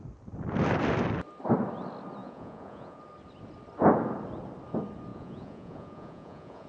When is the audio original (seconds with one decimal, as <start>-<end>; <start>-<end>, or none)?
0.0-2.2; 3.0-5.1